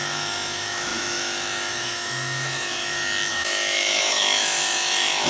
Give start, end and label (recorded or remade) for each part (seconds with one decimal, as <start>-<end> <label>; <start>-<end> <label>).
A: 0.0-5.3 remade